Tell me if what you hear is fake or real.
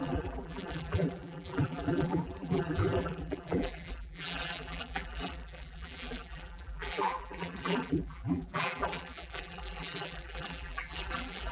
fake